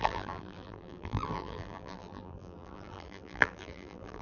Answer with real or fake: fake